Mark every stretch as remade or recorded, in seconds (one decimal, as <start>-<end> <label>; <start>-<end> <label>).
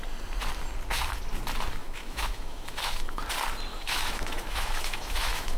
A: 0.0-1.8 recorded; 1.8-3.2 remade; 3.2-3.7 recorded; 3.7-5.6 remade